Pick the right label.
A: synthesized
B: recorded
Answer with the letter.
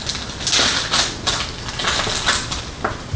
B